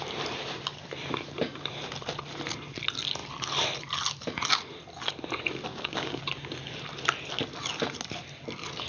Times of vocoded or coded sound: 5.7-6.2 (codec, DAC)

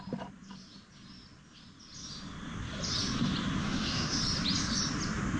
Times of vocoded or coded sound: 3.6-4.2 (autoencoder, DAC-VAE)

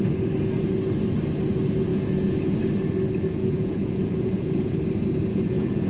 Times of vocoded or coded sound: 1.9-2.6 (vocoder, Vocos); 3.4-4.8; 5.3-5.9

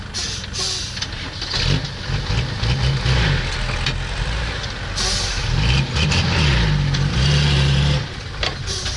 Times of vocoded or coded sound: 5.3-8.2 (vocoder, BigVGAN v2)

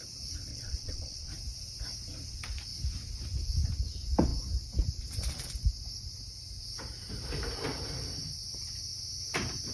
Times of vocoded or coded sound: 0.5-1.3 (vocoder, WaveNeXt)

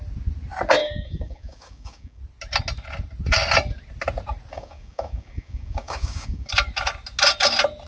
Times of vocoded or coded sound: 0.8-2.2 (codec, DAC); 4.5-6.5

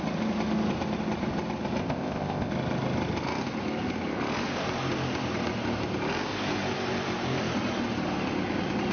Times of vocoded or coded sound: 1.8-2.5 (codec, ZipCodec)